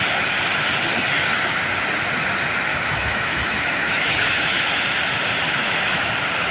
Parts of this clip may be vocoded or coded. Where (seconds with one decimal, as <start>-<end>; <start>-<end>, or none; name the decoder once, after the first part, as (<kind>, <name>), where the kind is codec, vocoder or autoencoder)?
2.7-4.6 (autoencoder, DAC-VAE); 5.6-6.1